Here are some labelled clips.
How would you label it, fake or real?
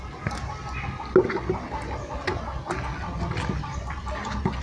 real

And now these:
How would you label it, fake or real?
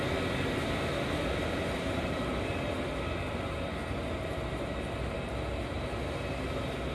real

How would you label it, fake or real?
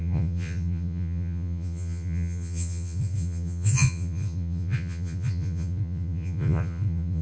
fake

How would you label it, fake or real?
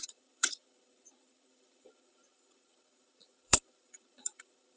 fake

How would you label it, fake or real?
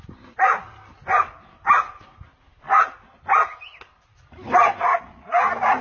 real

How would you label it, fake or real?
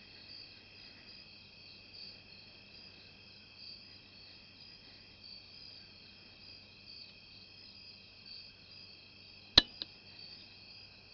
real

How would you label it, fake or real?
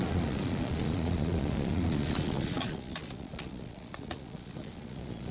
fake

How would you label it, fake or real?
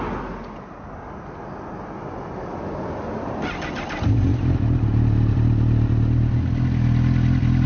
real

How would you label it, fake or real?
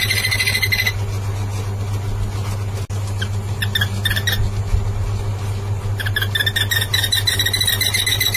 real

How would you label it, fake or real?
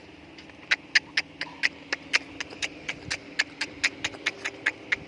real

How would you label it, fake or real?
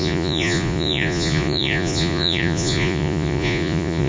fake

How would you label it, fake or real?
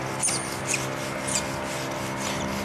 real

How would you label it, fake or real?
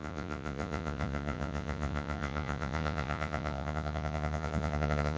fake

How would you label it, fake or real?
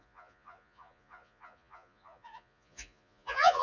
fake